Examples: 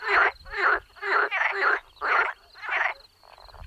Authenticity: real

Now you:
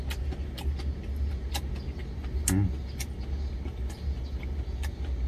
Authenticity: real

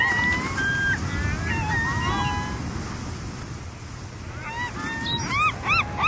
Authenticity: real